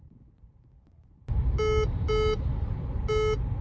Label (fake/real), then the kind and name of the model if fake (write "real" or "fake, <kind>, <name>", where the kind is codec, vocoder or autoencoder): real